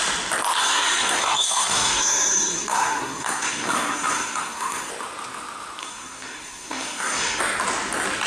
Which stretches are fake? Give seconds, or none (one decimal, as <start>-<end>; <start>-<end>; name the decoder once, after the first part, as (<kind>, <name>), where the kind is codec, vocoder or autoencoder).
0.6-4.9 (codec, SNAC); 5.8-7.4